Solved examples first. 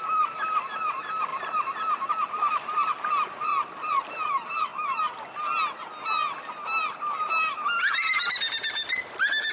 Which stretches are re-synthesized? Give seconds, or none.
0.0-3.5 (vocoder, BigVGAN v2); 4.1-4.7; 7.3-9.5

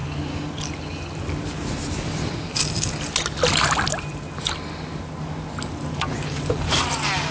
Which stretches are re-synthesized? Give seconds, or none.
none

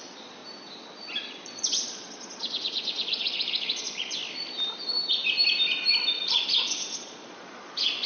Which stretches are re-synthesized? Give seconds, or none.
0.0-0.4 (vocoder, Vocos); 1.3-4.2; 6.1-8.1

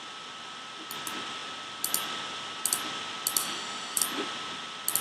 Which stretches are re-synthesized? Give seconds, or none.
3.4-4.0 (autoencoder, DAC-VAE)

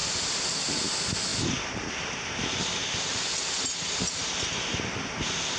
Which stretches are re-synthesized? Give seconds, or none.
none

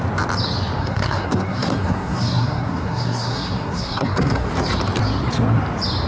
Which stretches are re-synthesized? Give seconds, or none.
0.8-4.5 (codec, SNAC)

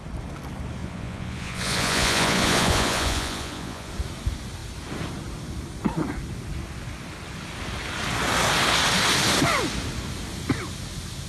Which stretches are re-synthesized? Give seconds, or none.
0.8-3.9 (vocoder, Vocos)

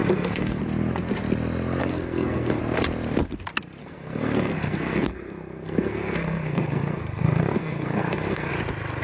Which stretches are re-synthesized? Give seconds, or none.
0.0-0.6 (codec, SNAC); 1.8-2.6; 3.8-8.5